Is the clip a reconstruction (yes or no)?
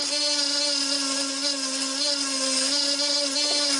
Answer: no